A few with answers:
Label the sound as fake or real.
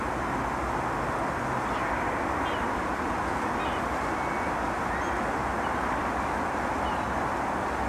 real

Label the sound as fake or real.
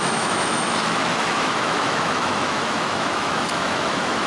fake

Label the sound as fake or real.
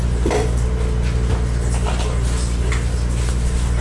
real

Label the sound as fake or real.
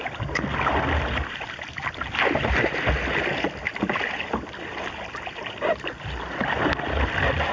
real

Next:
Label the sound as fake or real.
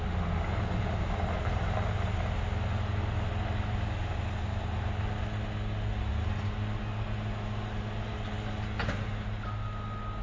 real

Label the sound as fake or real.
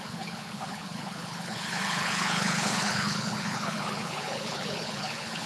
fake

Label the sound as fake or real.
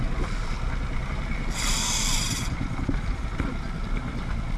real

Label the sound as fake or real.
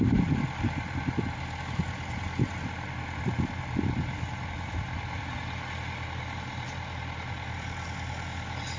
real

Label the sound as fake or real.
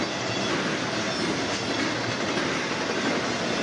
real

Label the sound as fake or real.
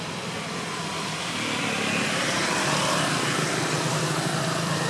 fake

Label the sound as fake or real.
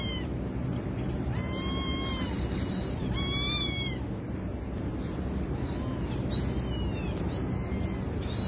real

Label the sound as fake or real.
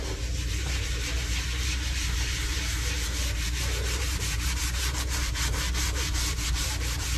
fake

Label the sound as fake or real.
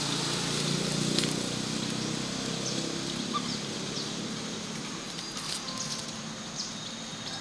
real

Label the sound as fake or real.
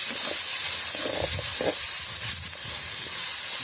real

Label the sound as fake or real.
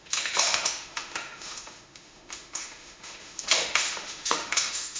fake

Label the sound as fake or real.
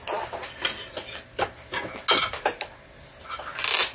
real